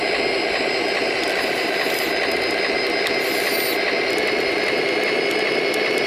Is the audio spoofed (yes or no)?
no